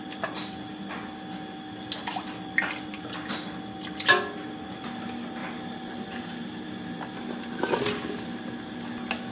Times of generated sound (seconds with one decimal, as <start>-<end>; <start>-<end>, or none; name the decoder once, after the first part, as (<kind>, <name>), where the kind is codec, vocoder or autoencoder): none